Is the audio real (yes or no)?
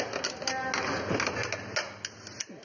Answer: yes